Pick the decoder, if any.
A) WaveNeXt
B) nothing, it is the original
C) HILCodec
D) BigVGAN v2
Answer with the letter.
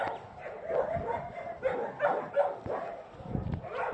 B